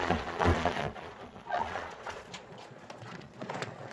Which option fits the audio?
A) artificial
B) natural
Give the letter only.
A